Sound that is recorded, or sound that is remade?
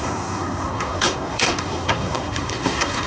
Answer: remade